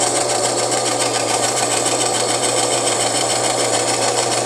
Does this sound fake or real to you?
fake